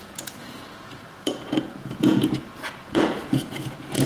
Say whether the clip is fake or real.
fake